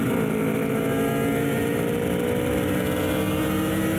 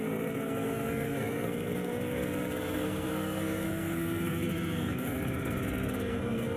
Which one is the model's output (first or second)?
second